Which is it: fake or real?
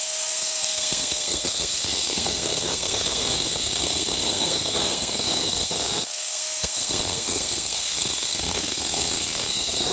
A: fake